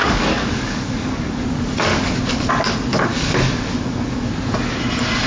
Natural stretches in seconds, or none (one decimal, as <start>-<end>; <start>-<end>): 1.4-1.9; 2.5-3.1; 4.3-5.3